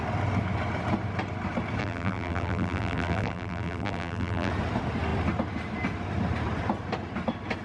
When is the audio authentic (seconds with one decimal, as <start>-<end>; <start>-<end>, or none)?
0.0-1.8; 4.5-7.6